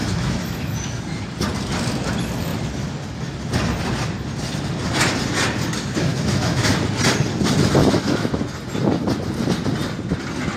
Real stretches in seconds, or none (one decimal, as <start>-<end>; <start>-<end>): 1.0-6.1; 6.7-7.8; 8.4-10.6